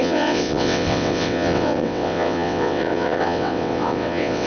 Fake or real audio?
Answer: fake